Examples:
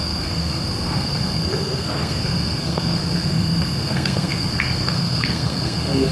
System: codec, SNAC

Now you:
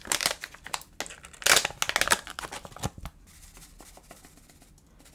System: none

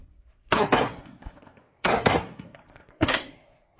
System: codec, SNAC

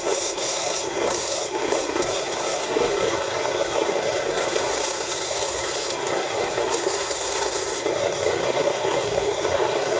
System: codec, SNAC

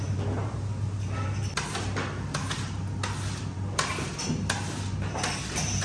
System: none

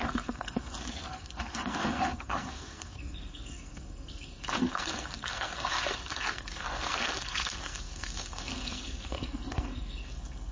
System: codec, SNAC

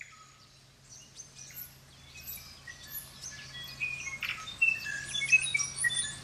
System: none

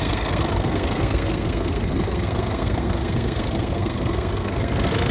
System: codec, SNAC